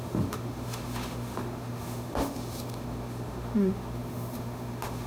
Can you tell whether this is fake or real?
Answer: fake